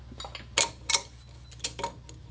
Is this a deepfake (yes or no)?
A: no